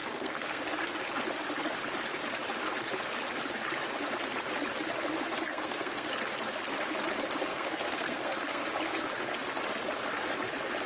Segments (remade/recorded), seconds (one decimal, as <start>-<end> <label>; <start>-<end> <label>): 0.0-0.6 remade; 0.6-5.5 recorded; 5.5-6.1 remade; 6.1-7.5 recorded; 7.5-8.6 remade; 8.6-10.9 recorded

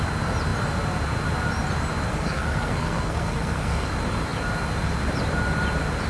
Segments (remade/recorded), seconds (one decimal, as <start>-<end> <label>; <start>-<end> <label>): 0.0-2.1 recorded; 2.1-3.9 remade; 3.9-6.1 recorded

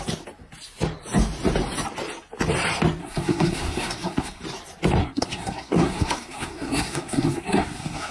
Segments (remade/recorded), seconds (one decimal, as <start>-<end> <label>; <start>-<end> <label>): 0.0-3.0 recorded; 3.0-4.4 remade; 4.4-5.0 recorded; 5.0-8.1 remade

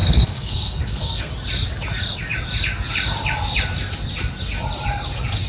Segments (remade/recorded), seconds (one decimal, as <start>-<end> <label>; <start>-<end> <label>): 0.0-1.3 remade; 1.3-5.5 recorded